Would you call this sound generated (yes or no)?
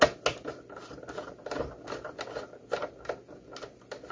no